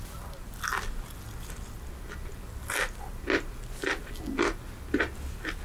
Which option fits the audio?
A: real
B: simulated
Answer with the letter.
A